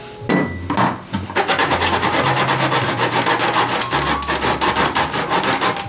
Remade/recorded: recorded